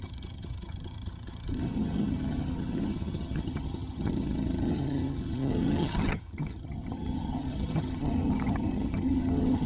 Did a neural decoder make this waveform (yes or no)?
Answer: yes